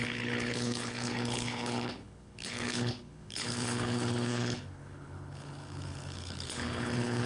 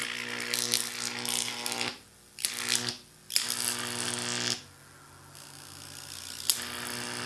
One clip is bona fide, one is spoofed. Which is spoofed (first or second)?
first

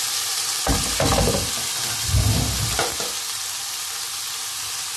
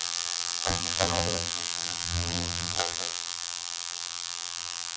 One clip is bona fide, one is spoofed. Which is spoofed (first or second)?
second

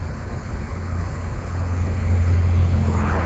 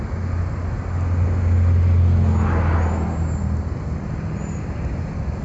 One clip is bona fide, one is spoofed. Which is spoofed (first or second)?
first